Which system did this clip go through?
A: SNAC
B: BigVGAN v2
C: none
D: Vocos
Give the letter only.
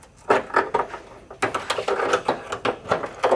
C